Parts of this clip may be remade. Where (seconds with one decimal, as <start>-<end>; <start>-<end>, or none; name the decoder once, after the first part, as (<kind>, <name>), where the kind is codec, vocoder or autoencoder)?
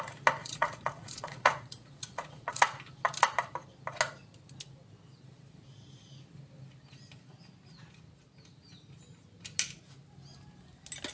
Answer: 0.4-2.6 (vocoder, Vocos)